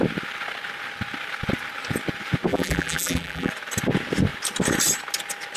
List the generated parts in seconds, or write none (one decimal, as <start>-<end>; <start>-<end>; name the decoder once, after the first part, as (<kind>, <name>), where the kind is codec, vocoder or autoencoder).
2.5-3.5 (vocoder, BigVGAN v2)